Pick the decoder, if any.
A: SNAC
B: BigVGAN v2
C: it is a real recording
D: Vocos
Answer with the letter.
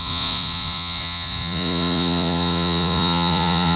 D